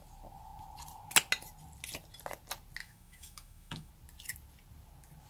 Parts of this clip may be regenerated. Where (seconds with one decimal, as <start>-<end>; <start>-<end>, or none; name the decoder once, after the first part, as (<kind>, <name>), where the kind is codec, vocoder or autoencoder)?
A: 2.8-3.9 (autoencoder, DAC-VAE)